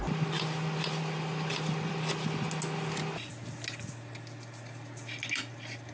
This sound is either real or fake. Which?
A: real